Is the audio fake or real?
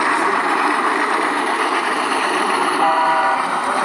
fake